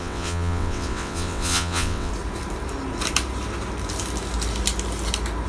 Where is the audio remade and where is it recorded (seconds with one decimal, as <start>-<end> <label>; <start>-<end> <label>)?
0.0-2.1 remade; 2.1-5.5 recorded